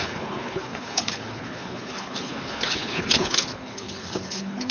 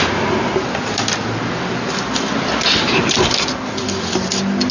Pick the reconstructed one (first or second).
first